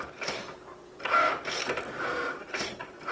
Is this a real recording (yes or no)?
no